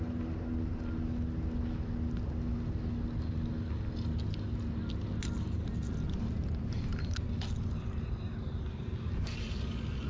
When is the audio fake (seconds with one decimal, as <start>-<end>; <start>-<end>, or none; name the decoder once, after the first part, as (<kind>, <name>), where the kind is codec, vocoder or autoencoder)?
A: none